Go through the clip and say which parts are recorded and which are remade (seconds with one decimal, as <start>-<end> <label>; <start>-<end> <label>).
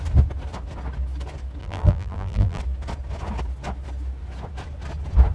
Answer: 0.0-1.6 recorded; 1.6-2.6 remade; 2.6-5.3 recorded